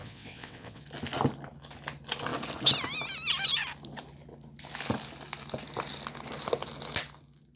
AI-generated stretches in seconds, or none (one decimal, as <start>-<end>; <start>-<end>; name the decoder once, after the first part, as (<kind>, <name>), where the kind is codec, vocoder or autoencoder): 0.0-0.8 (vocoder, WaveNeXt)